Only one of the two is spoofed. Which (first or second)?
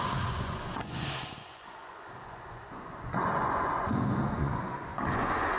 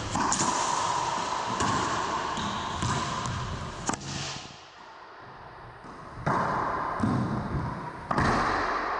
first